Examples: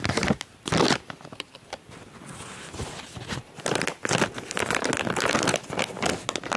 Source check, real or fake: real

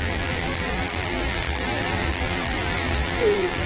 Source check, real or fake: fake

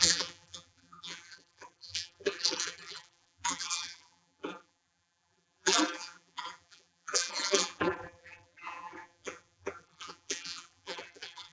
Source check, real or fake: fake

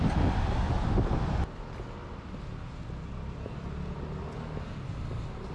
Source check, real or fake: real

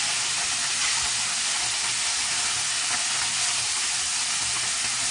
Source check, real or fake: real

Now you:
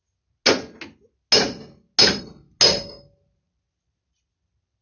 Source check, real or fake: real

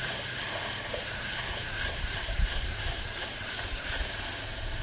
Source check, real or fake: fake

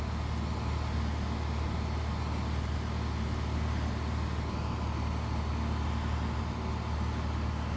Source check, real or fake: real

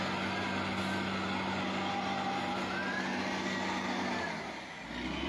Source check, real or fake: real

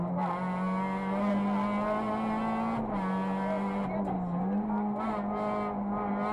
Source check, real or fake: real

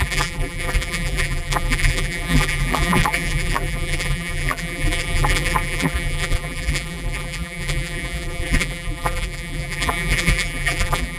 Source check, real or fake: fake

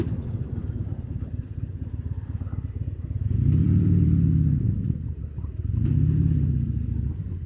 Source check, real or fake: fake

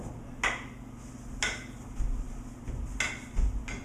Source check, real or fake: real